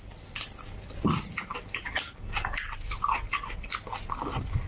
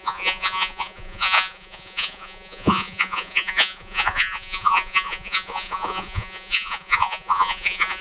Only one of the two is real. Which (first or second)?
first